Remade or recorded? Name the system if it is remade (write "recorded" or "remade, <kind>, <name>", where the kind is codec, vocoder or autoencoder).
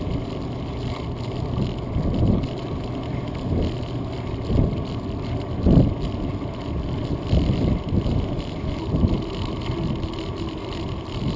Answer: recorded